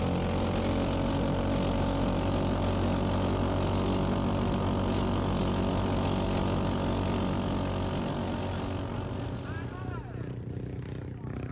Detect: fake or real real